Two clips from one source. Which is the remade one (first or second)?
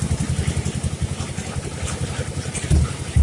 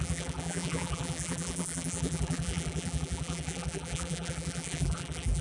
second